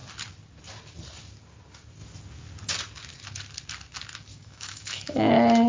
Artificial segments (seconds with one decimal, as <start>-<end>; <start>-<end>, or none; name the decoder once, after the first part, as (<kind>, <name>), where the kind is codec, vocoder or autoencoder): 4.3-5.3 (autoencoder, DAC-VAE)